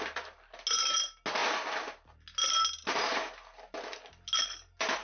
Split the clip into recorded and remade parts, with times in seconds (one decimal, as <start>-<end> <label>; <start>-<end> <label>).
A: 0.0-5.0 recorded